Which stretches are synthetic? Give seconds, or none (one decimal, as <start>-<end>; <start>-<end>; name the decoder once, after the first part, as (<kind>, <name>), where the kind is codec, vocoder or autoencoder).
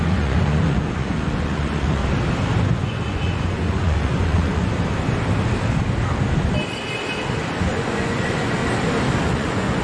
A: 0.0-2.0 (vocoder, Vocos); 2.6-4.6; 7.7-8.6; 9.2-9.8